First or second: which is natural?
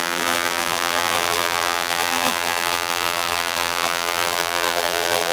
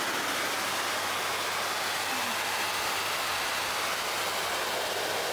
second